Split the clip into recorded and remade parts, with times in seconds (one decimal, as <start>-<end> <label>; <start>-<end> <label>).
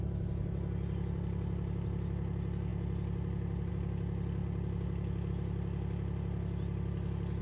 0.0-7.4 recorded